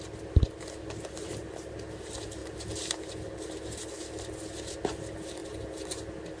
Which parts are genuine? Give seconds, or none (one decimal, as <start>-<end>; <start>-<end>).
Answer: 0.0-6.4